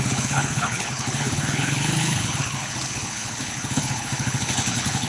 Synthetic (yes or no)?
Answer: yes